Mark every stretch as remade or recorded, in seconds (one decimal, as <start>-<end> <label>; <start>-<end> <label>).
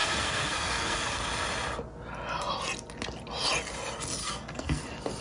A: 0.0-1.2 remade; 1.2-4.2 recorded; 4.2-4.8 remade; 4.8-5.2 recorded